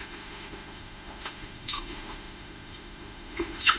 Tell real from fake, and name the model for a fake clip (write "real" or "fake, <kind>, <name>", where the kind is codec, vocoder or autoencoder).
fake, autoencoder, DAC-VAE